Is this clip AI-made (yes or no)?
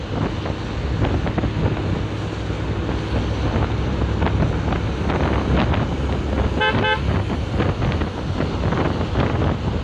no